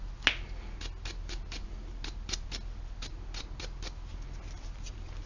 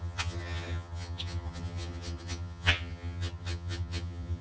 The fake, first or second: second